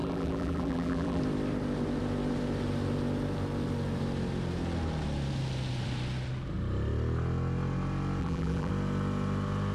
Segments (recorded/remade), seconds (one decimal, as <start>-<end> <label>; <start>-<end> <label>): 0.0-1.2 remade; 1.2-8.2 recorded; 8.2-8.7 remade; 8.7-9.7 recorded